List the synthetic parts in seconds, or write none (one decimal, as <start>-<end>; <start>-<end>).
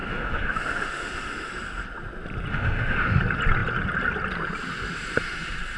0.0-1.5; 2.5-3.2